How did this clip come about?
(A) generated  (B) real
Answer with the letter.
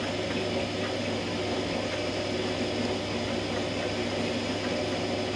B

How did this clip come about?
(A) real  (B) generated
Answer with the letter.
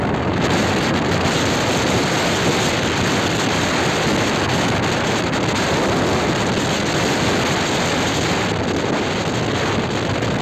A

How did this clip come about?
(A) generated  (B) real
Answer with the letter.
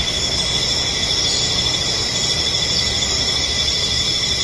B